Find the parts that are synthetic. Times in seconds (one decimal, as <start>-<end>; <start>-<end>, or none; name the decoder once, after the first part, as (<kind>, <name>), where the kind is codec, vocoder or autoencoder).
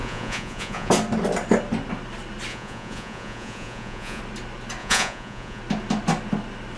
0.0-0.9 (vocoder, Vocos); 2.5-4.2; 4.8-5.6